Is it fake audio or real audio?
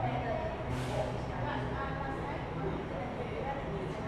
real